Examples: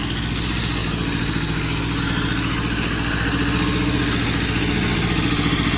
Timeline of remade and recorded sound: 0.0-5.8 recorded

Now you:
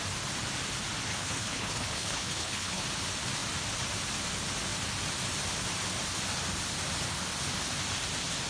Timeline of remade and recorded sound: 0.0-1.1 recorded; 1.1-2.8 remade; 2.8-8.5 recorded

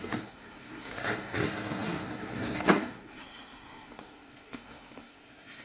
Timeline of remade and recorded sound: 0.0-5.6 remade